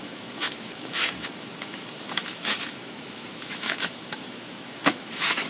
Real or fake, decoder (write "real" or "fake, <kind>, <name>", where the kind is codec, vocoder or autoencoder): fake, autoencoder, DAC-VAE